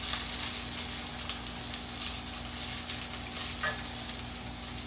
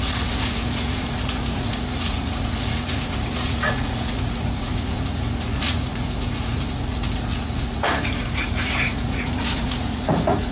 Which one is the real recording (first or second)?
first